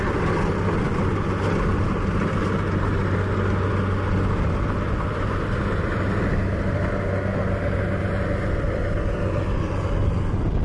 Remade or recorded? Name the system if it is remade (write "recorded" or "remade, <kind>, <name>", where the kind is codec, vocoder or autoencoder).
recorded